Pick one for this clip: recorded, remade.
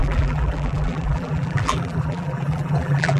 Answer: remade